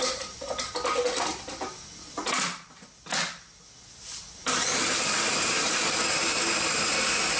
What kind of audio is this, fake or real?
real